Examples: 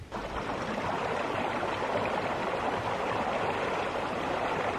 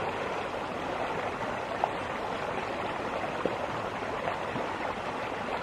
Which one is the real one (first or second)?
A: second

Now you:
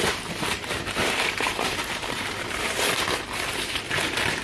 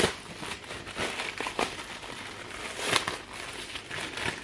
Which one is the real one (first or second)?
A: second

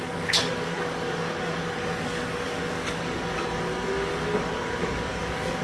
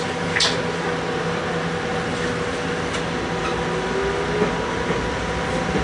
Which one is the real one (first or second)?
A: second